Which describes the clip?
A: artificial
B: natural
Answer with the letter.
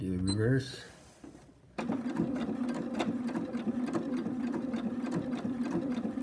B